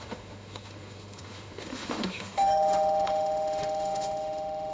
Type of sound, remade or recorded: remade